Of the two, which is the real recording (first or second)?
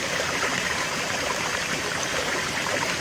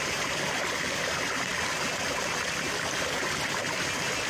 second